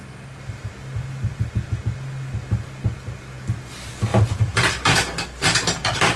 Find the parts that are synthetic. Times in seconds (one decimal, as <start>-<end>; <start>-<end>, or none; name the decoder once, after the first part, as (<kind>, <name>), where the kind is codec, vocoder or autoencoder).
0.0-0.7 (vocoder, BigVGAN v2); 4.1-6.2